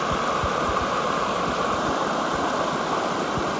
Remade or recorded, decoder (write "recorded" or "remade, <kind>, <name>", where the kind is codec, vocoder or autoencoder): recorded